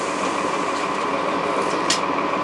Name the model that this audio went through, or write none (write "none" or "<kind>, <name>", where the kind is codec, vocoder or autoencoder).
vocoder, BigVGAN v2